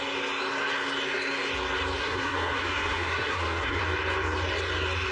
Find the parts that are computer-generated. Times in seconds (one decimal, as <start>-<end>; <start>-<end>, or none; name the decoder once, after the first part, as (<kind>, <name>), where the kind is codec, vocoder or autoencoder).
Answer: 2.0-3.8 (codec, SNAC)